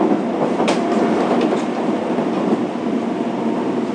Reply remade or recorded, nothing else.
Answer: recorded